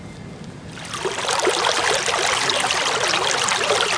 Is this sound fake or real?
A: real